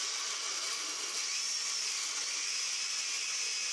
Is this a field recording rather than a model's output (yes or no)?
yes